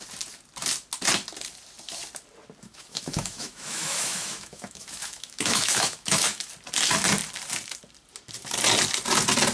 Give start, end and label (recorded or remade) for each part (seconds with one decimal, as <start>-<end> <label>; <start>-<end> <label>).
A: 0.0-2.6 recorded; 2.6-6.5 remade; 6.5-9.5 recorded